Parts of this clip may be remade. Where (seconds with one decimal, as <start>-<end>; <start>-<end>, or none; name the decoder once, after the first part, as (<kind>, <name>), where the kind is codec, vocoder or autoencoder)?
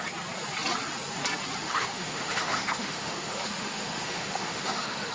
1.6-5.1 (autoencoder, DAC-VAE)